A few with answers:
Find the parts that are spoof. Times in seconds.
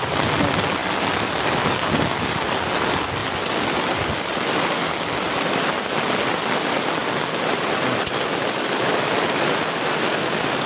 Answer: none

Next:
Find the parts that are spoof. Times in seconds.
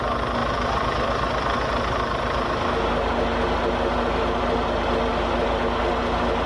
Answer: none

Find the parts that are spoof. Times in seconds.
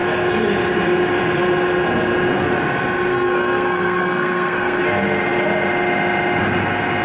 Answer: 3.1-4.8 (codec, SNAC)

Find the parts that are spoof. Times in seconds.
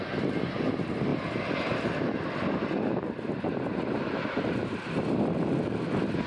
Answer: none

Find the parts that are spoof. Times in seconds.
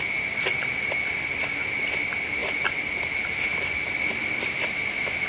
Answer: none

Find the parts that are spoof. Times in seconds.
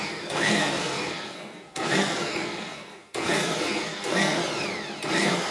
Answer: 0.0-4.4 (codec, SNAC); 5.1-5.5